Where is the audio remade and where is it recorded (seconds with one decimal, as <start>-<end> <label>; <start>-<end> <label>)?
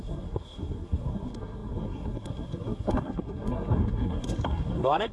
0.0-5.1 remade